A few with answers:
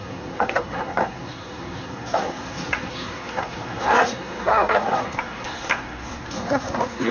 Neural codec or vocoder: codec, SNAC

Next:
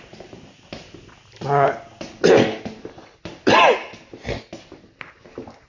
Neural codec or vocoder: none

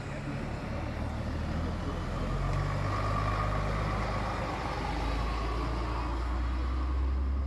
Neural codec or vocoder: none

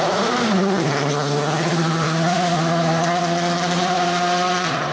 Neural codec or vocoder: none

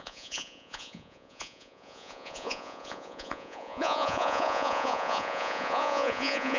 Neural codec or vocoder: vocoder, Vocos